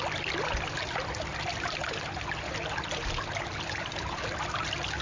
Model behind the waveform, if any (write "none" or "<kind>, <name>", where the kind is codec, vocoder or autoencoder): none